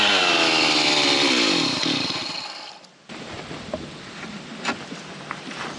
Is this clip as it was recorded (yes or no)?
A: no